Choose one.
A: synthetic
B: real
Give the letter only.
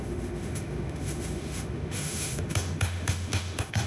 A